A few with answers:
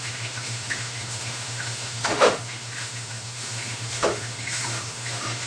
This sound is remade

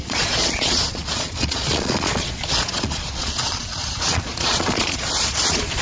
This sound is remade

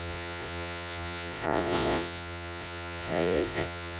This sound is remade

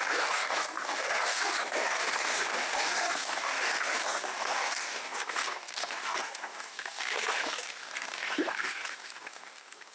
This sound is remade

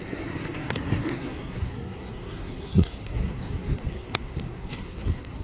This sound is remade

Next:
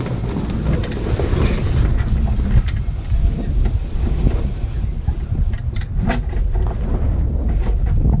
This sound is recorded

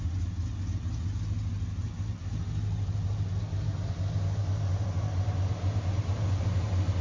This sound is recorded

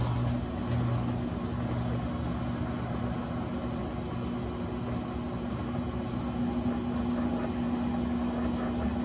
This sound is recorded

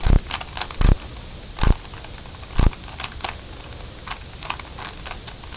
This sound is recorded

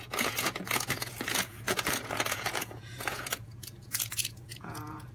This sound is remade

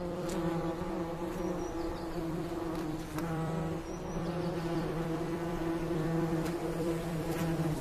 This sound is remade